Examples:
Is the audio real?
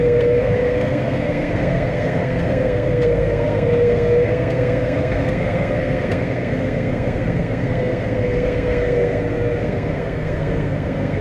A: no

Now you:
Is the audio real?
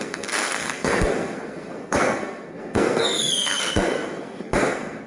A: no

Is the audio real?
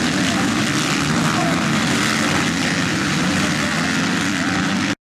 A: yes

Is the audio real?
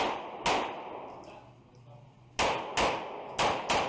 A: yes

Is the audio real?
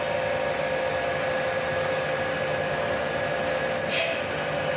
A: yes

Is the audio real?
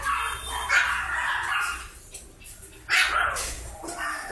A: yes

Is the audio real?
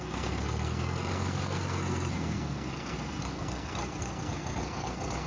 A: no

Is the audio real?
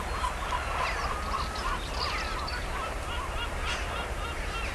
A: yes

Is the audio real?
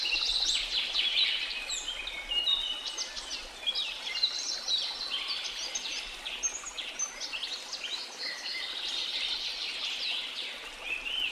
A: yes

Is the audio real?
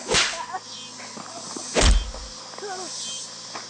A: yes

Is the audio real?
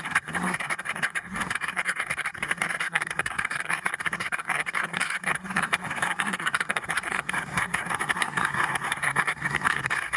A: no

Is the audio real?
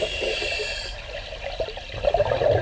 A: yes